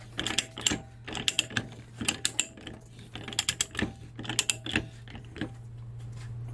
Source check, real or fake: real